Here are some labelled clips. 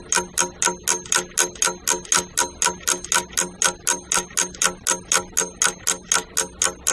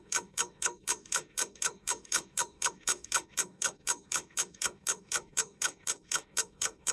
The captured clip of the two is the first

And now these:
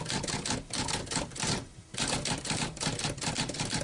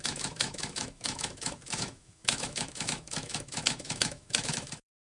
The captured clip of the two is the first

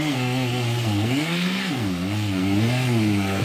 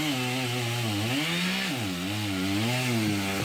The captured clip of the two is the second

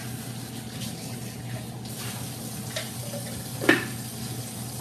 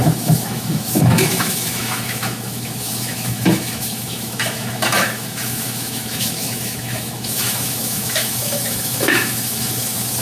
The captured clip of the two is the first